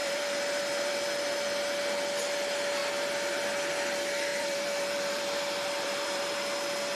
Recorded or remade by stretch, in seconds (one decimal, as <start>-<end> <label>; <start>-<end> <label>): 0.0-1.0 remade; 1.0-4.3 recorded; 4.3-6.2 remade; 6.2-7.0 recorded